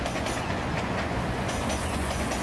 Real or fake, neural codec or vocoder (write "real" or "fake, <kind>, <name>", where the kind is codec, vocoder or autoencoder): fake, vocoder, Vocos